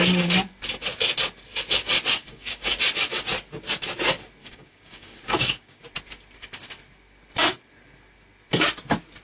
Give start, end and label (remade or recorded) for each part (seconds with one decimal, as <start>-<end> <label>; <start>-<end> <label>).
0.0-2.2 recorded; 2.2-2.8 remade; 2.8-4.4 recorded; 4.4-5.8 remade; 5.8-9.2 recorded